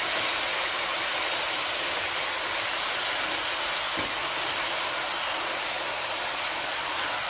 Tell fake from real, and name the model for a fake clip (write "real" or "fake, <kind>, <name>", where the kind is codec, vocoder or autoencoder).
real